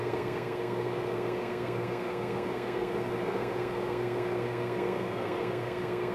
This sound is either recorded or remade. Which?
remade